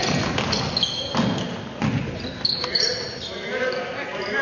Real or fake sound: real